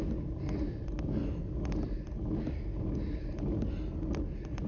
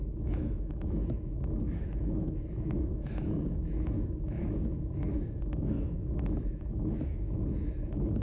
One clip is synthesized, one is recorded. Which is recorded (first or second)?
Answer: first